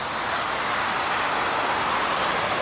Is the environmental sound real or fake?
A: real